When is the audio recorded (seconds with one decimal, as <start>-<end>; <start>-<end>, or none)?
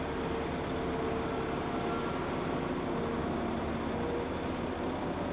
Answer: 0.0-5.3